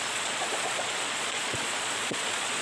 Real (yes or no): no